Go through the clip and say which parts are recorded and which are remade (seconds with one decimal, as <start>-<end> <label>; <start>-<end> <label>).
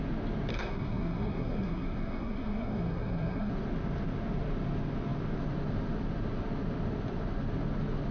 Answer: 0.0-0.5 recorded; 0.5-3.5 remade; 3.5-8.1 recorded